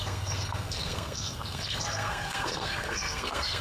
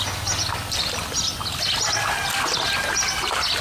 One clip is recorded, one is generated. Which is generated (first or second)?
first